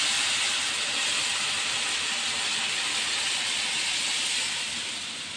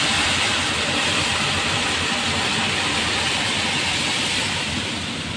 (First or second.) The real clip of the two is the first